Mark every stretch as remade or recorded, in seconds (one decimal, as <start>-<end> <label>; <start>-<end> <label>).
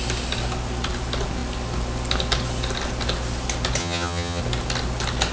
0.0-3.8 recorded; 3.8-4.4 remade; 4.4-5.3 recorded